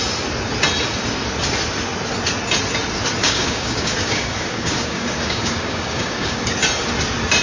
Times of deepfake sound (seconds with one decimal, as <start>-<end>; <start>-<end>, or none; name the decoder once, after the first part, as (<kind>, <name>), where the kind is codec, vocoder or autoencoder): 3.2-6.4 (codec, DAC)